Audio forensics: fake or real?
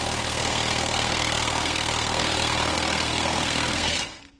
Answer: fake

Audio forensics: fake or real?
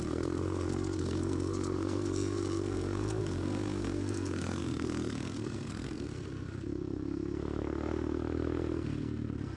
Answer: fake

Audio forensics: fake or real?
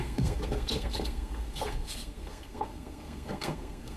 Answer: fake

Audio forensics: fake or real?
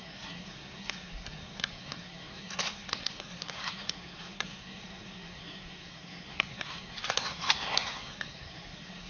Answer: fake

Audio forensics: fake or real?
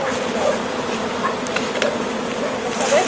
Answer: real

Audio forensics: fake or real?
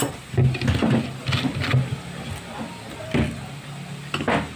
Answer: real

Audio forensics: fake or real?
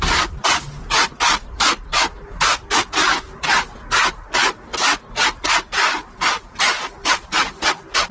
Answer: real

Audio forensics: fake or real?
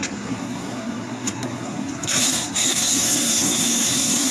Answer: fake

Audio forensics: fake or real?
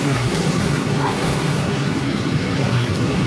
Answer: fake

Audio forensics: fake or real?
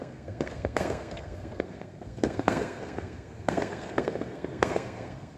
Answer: fake